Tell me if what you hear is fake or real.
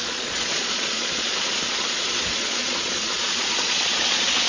fake